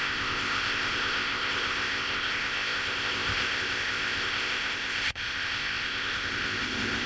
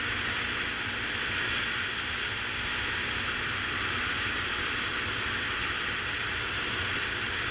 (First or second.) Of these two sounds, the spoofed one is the first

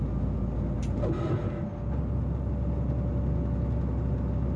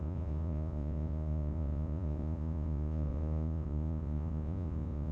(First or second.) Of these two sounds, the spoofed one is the second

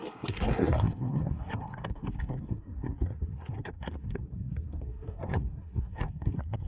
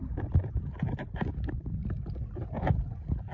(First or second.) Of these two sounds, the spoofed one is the first